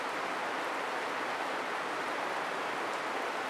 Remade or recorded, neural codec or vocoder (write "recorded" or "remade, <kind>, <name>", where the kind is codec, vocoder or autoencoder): remade, vocoder, BigVGAN v2